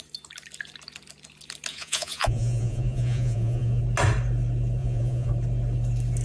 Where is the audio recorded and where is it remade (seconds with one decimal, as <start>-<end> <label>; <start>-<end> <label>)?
0.0-1.7 recorded; 1.7-3.8 remade; 3.8-4.8 recorded; 4.8-5.3 remade; 5.3-6.2 recorded